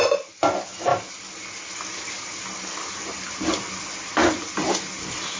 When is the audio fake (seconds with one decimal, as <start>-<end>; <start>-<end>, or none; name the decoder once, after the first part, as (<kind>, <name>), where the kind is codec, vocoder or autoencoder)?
none